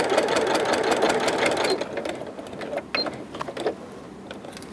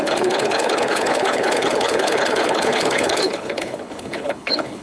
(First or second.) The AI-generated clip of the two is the second